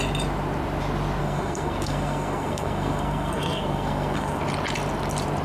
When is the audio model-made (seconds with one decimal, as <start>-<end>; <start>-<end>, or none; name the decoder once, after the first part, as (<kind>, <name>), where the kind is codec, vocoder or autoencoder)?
1.2-4.4 (codec, SNAC)

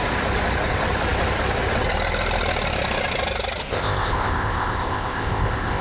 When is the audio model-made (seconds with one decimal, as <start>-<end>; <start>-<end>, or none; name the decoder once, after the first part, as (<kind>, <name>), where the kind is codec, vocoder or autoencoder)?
3.7-5.8 (codec, ZipCodec)